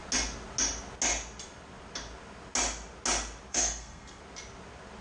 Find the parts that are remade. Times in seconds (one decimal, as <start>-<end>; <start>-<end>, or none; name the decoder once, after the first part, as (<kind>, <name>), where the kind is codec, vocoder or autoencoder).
3.5-4.2 (codec, SNAC)